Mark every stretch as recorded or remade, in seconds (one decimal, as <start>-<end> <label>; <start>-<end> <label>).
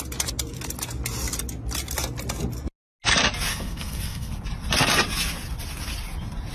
0.0-3.5 recorded; 3.5-4.3 remade; 4.3-6.5 recorded